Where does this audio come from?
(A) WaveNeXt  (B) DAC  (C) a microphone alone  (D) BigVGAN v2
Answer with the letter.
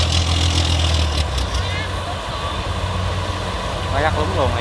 C